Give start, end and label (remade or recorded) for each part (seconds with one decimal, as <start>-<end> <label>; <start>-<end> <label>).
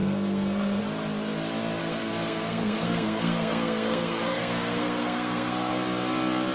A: 0.0-0.8 remade; 0.8-1.8 recorded; 1.8-5.7 remade; 5.7-6.5 recorded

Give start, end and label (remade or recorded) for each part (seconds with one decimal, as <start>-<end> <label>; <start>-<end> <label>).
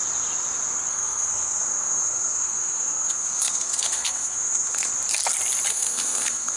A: 0.0-0.9 recorded; 0.9-4.9 remade; 4.9-5.7 recorded; 5.7-6.6 remade